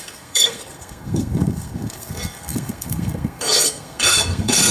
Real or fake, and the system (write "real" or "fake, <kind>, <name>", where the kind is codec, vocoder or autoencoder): fake, codec, SNAC